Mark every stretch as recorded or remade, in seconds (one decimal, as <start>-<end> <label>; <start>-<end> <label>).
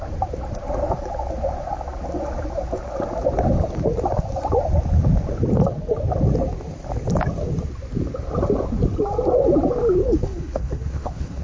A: 0.0-10.0 recorded; 10.0-11.4 remade